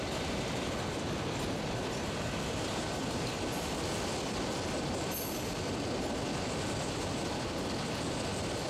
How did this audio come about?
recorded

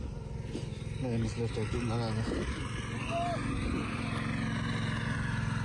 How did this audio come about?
recorded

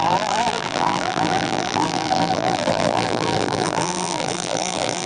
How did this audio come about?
remade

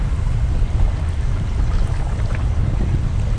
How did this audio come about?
recorded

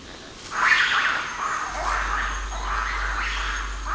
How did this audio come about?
recorded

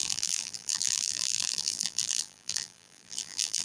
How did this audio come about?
remade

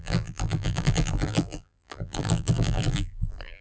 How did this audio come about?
remade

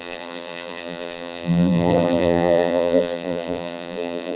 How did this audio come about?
remade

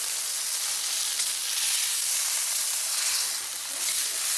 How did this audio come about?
recorded